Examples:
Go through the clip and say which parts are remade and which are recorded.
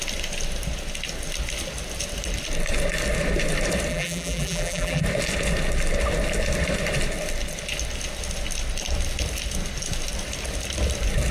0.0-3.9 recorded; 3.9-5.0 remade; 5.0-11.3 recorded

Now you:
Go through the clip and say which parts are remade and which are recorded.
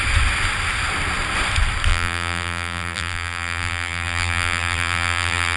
0.0-1.9 recorded; 1.9-5.6 remade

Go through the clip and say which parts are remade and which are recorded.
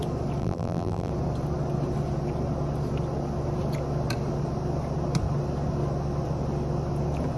0.0-0.4 recorded; 0.4-1.1 remade; 1.1-7.4 recorded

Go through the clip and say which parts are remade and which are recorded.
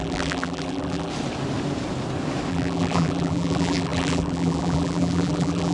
0.0-1.1 remade; 1.1-2.5 recorded; 2.5-5.7 remade